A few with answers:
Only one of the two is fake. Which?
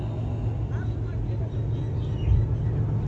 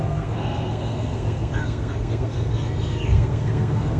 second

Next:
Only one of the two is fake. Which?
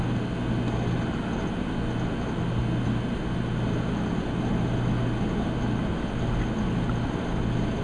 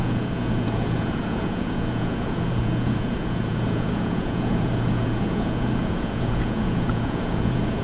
second